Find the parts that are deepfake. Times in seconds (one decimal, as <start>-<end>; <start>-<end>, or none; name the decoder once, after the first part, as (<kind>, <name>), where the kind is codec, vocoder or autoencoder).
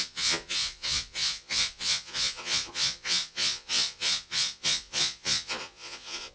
0.0-6.3 (vocoder, Vocos)